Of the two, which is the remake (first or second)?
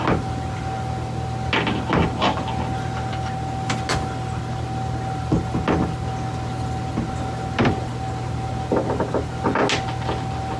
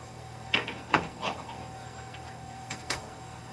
second